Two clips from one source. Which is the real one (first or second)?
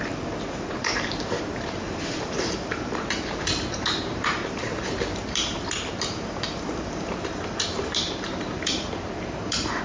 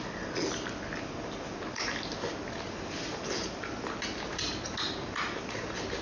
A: second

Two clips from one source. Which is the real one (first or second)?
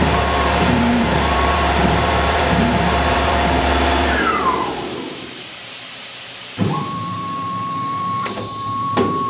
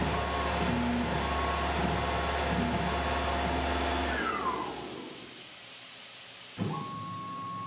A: second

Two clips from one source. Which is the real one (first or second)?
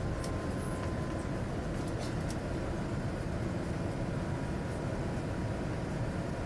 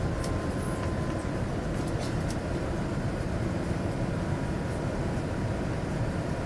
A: first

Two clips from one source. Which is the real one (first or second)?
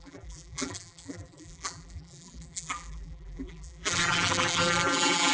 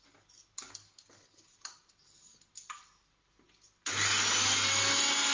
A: second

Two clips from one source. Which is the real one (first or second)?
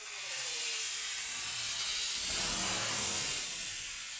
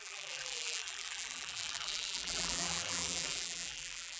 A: first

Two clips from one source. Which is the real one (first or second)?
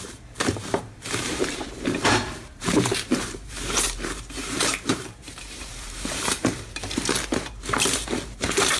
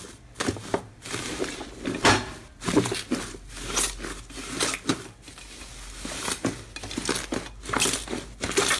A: second